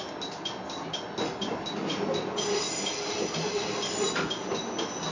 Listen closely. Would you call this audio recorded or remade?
recorded